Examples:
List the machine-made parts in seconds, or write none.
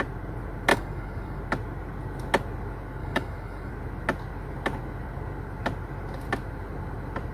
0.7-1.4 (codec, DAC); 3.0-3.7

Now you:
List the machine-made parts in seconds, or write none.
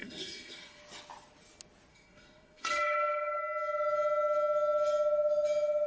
0.0-0.8 (codec, SNAC); 1.9-3.4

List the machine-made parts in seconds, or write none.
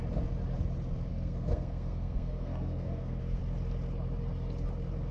1.1-3.4 (codec, SNAC)